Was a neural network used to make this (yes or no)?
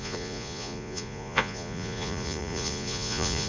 yes